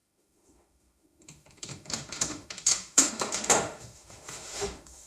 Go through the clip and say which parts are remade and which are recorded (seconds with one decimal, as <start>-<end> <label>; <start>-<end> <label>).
0.0-5.1 remade